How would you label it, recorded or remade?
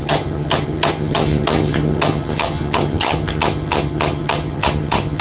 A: remade